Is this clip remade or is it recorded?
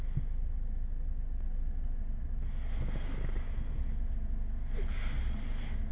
recorded